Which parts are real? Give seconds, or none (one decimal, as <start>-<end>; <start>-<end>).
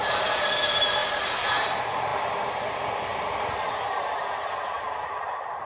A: 1.0-1.6